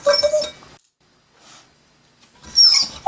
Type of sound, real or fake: real